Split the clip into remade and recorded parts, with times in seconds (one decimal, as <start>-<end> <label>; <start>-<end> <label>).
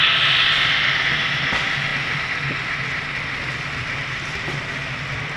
0.0-3.8 recorded; 3.8-4.5 remade; 4.5-5.4 recorded